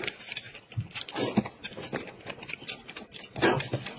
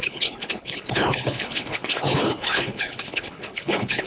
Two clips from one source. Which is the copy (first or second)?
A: second